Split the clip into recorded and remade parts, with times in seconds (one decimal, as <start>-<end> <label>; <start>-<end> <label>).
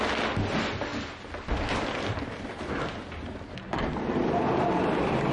0.0-5.3 recorded